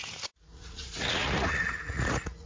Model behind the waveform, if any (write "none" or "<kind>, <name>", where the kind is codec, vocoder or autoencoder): vocoder, Vocos